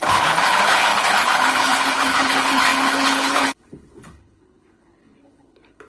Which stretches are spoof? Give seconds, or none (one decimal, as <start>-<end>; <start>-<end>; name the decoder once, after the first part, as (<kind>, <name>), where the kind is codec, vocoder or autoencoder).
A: 0.0-5.9 (codec, HILCodec)